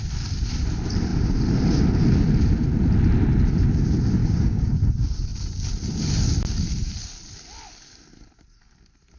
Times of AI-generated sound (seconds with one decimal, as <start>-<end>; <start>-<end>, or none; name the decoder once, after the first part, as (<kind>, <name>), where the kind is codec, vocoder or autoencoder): 4.2-4.8 (codec, DAC)